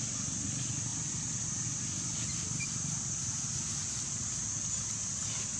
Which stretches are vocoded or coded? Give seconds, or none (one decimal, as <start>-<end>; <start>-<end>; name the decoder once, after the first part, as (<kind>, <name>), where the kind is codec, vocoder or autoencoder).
none